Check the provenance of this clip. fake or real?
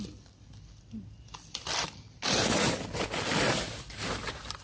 fake